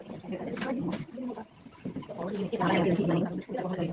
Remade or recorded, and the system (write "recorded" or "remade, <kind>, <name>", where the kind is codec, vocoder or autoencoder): recorded